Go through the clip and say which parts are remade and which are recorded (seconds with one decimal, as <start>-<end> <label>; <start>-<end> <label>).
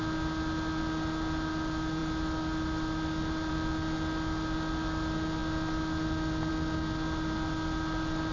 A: 0.0-8.3 recorded